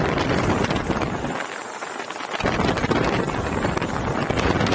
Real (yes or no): yes